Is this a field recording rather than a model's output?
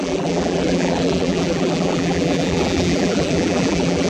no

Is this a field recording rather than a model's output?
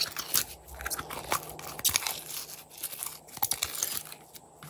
yes